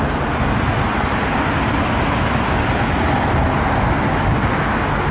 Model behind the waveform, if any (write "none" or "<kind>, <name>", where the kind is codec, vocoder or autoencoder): none